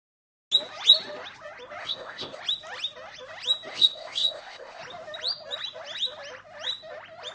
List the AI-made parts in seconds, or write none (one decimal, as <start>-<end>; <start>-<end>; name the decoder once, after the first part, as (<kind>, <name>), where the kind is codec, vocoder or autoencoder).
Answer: 1.8-2.4 (codec, ZipCodec); 3.7-4.8